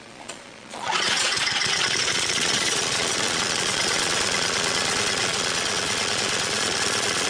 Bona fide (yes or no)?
no